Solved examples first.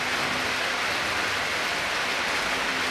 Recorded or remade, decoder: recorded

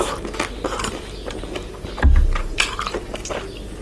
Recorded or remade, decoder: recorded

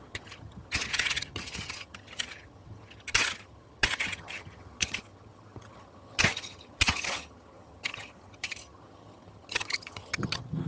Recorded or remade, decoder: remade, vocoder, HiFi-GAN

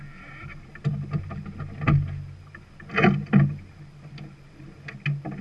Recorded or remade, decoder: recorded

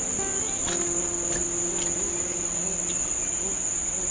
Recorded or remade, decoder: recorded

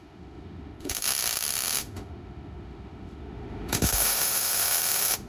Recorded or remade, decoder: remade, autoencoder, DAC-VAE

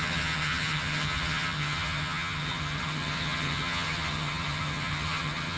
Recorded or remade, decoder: remade, vocoder, HiFi-GAN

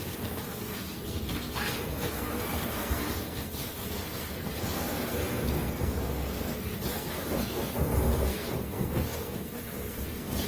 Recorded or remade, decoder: remade, codec, SNAC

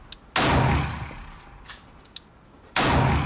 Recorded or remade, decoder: recorded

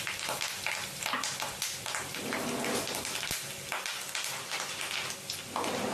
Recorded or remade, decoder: recorded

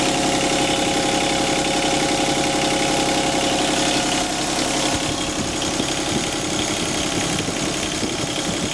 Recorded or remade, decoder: recorded